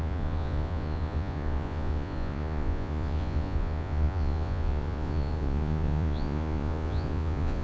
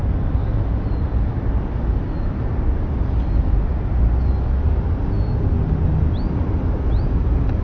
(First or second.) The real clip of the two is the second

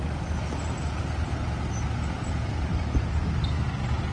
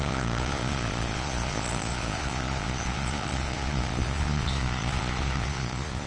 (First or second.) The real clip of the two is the first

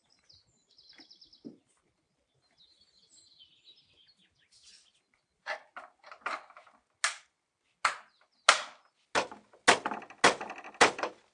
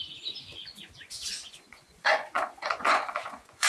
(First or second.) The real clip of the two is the first